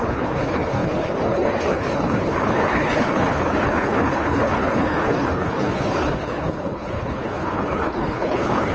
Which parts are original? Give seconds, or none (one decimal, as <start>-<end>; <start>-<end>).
none